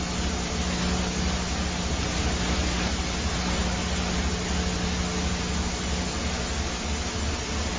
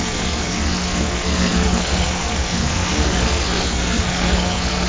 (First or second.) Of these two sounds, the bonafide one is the first